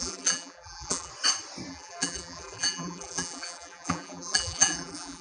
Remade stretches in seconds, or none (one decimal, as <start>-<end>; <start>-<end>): 0.0-1.1; 1.7-5.2

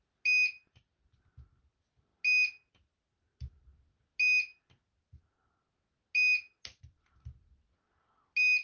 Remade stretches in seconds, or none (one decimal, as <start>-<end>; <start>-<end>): none

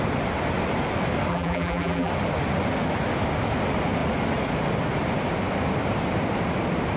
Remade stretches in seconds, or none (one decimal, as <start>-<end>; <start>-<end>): 1.3-2.1

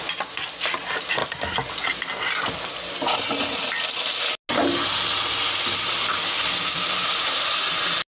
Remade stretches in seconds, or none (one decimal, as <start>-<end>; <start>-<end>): none

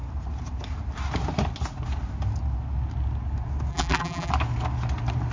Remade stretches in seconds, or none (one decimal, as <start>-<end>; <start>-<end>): 3.7-4.3

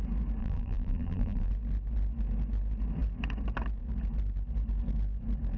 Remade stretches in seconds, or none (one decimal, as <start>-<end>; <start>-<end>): 0.4-1.5

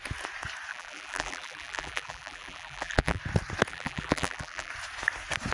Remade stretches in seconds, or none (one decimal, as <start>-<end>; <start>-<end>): 0.7-3.2; 3.7-4.7